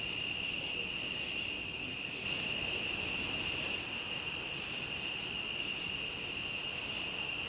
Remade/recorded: remade